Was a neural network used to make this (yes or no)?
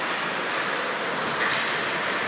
no